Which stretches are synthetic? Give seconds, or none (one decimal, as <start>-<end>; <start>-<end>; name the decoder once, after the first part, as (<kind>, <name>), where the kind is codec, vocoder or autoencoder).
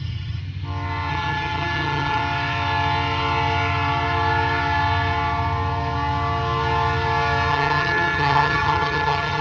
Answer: 0.0-0.4 (vocoder, HiFi-GAN); 1.1-2.2; 7.5-9.4